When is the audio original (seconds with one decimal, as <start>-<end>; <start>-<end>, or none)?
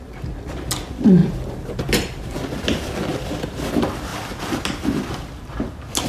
0.0-1.2; 3.3-4.1; 5.1-6.1